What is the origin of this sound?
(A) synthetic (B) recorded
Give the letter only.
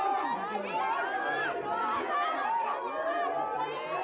B